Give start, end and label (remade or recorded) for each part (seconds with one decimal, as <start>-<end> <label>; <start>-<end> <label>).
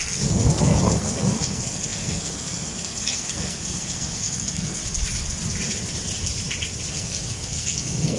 0.0-4.8 remade; 4.8-6.9 recorded; 6.9-8.2 remade